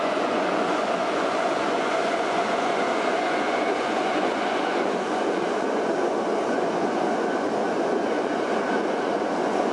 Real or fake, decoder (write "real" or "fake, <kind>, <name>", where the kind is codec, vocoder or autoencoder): fake, vocoder, Vocos